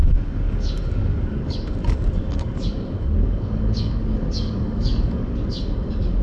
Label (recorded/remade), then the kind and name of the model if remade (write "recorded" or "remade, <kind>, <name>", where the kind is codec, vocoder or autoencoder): remade, codec, DAC